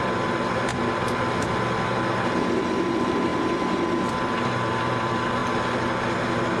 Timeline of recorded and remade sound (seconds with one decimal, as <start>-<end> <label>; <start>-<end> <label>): 0.0-0.7 remade; 0.7-2.7 recorded; 2.7-5.4 remade; 5.4-6.6 recorded